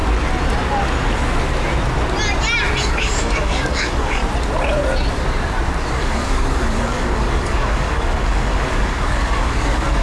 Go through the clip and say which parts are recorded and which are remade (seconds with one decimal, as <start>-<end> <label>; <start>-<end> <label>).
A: 0.0-2.9 recorded; 2.9-4.2 remade; 4.2-6.0 recorded; 6.0-10.0 remade